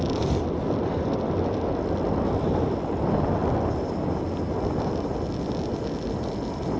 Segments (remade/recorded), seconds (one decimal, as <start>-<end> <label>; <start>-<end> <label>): 0.0-6.8 recorded